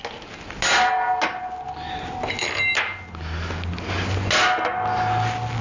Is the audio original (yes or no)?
yes